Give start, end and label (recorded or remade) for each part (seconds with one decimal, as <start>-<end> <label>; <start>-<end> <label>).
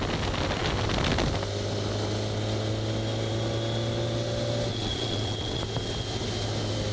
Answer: 0.0-4.7 recorded; 4.7-5.6 remade; 5.6-6.9 recorded